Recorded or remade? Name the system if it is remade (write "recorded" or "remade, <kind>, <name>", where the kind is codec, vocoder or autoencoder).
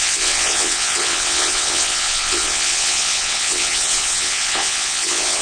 remade, vocoder, WaveNeXt